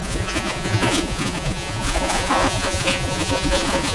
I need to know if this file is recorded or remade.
remade